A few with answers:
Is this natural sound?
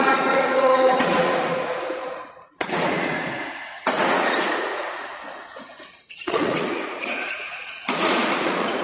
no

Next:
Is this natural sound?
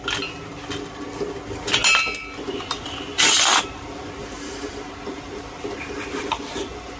yes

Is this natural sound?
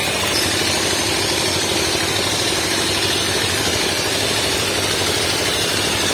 yes